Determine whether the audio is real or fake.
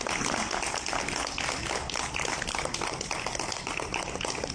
real